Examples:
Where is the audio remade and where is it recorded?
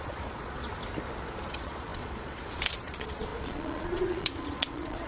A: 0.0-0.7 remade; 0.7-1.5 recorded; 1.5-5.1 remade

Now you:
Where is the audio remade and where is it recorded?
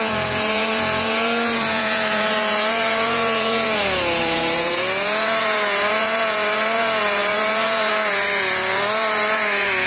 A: 0.0-9.9 remade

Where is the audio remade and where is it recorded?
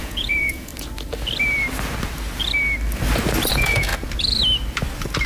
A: 0.0-0.7 remade; 0.7-3.5 recorded; 3.5-3.9 remade; 3.9-5.3 recorded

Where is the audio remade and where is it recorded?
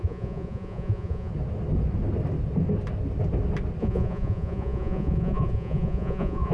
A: 0.0-1.3 remade; 1.3-3.8 recorded; 3.8-6.5 remade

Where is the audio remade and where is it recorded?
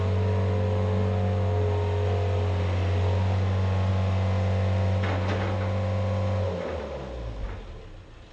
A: 0.0-8.3 recorded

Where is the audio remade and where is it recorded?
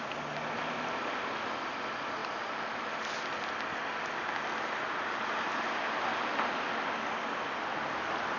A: 0.0-8.4 recorded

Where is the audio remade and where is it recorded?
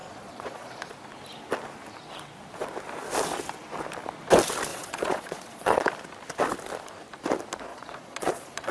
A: 0.0-0.9 remade; 0.9-4.7 recorded; 4.7-5.9 remade; 5.9-7.7 recorded; 7.7-8.7 remade